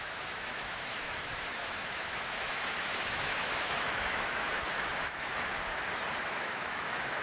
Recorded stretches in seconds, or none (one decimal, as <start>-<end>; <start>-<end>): 5.3-6.2